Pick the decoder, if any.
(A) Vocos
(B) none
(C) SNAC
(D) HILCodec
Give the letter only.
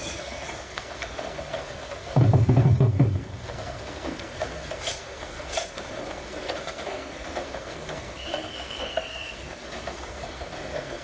C